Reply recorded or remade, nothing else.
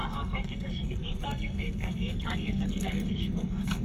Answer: remade